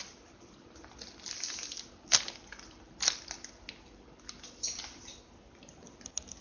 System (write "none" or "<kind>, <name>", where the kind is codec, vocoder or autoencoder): none